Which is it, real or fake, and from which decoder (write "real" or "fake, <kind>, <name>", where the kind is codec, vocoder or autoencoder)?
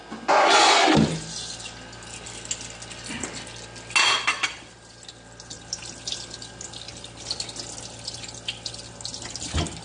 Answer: real